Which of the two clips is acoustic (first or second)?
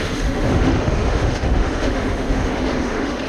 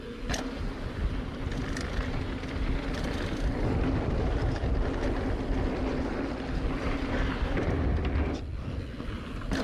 second